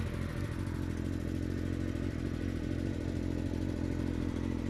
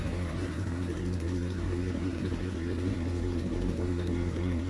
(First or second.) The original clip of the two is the first